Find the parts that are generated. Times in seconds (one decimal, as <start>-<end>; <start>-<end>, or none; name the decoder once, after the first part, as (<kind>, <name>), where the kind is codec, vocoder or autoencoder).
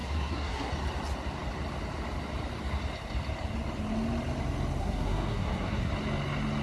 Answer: 0.0-0.7 (codec, SNAC); 4.8-5.9